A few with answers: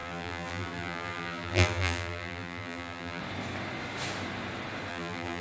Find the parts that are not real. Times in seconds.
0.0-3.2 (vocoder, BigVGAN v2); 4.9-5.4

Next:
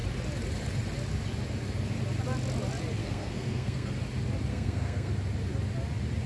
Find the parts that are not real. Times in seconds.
3.0-3.9 (codec, SNAC); 4.5-5.1